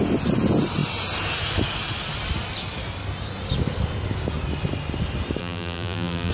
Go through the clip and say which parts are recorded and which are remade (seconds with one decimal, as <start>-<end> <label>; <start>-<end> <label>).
0.0-5.4 recorded; 5.4-6.3 remade